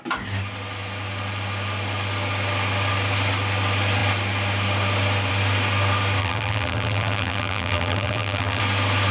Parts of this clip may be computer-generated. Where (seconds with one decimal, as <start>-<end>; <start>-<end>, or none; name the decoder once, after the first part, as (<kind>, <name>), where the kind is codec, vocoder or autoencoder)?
6.2-8.6 (vocoder, BigVGAN v2)